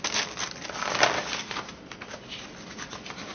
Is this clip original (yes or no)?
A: yes